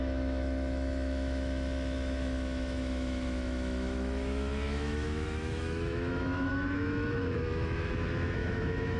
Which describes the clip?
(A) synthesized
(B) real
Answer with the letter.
A